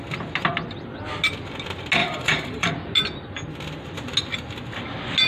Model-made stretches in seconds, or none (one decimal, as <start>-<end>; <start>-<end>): 2.0-2.7